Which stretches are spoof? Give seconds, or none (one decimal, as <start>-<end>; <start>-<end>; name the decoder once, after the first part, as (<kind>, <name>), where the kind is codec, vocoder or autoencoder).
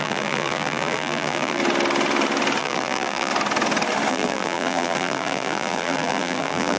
0.0-1.6 (vocoder, BigVGAN v2); 2.6-3.3; 4.1-6.8